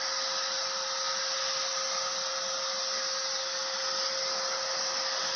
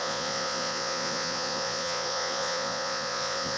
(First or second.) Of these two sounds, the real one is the first